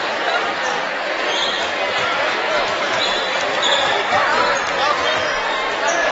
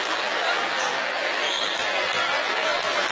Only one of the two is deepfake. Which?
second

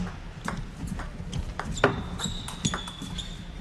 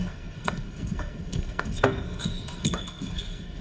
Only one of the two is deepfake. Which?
second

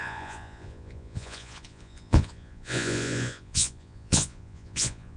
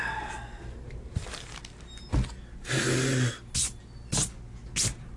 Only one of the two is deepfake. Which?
first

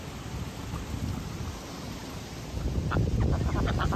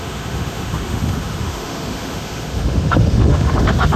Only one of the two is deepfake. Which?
second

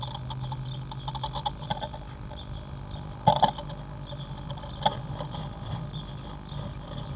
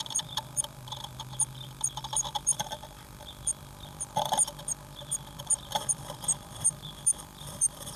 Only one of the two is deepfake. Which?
second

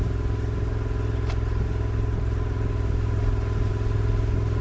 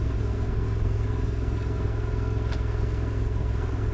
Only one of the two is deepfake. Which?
second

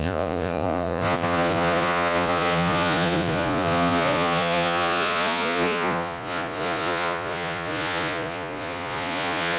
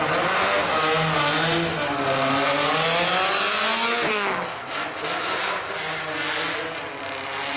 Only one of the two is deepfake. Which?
first